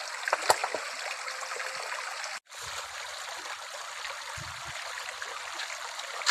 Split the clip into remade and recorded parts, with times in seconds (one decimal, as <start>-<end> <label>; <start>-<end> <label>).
0.0-6.3 recorded